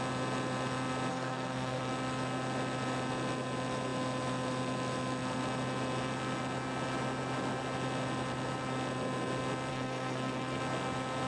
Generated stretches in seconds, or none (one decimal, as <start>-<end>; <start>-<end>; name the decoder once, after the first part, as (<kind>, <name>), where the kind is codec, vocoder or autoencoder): 1.1-1.9 (codec, SNAC); 9.7-10.6